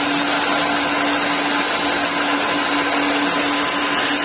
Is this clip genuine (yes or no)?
yes